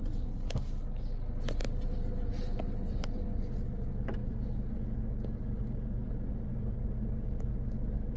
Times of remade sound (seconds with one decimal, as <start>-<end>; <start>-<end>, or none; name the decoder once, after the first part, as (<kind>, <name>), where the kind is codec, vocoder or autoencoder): none